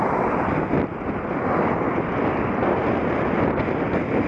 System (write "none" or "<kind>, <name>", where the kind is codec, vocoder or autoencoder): none